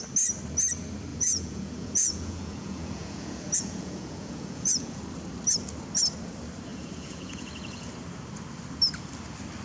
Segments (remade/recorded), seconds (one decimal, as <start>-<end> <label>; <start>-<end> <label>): 0.0-1.1 recorded; 1.1-5.0 remade; 5.0-6.7 recorded; 6.7-7.9 remade; 7.9-9.6 recorded